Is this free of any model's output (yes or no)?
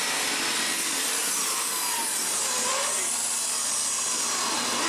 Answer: yes